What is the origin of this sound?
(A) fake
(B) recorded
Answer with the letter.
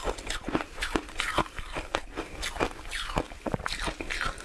B